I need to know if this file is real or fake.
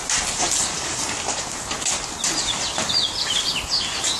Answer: real